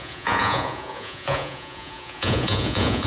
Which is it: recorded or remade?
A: remade